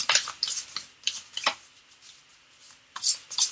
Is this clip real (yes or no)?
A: yes